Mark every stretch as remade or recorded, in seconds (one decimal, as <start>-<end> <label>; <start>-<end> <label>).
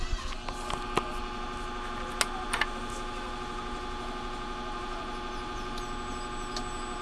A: 0.0-7.0 recorded